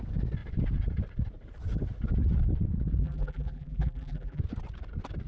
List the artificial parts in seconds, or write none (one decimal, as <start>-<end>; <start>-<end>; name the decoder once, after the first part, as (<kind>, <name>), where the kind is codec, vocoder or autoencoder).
3.0-4.4 (vocoder, BigVGAN v2)